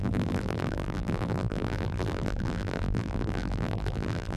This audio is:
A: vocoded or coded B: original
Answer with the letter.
A